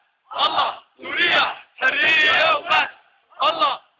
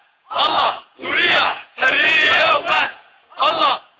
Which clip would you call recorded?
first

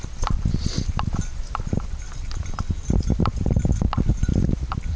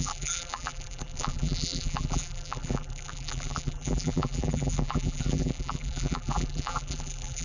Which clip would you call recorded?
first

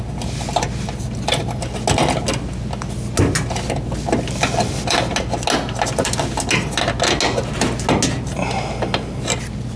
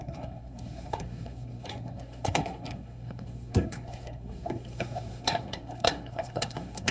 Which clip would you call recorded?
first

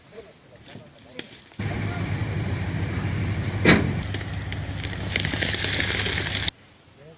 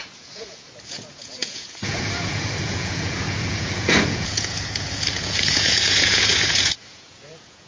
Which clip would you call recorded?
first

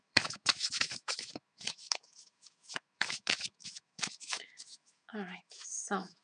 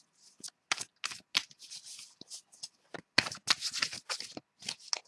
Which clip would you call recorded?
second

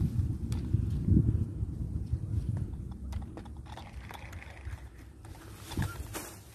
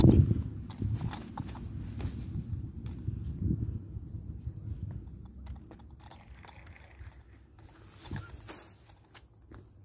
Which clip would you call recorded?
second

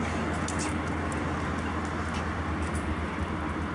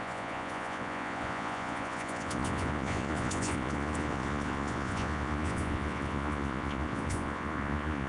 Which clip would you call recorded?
first